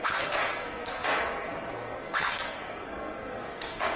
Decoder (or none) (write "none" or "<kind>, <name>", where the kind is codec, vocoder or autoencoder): codec, SNAC